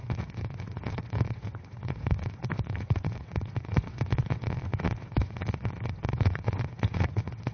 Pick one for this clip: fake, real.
fake